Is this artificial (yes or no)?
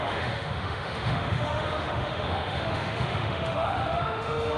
yes